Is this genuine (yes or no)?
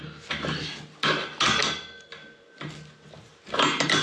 yes